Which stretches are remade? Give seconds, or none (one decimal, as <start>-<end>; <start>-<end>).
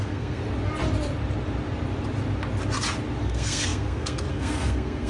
0.0-0.4; 3.2-5.1